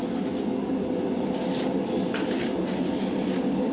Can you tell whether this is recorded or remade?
recorded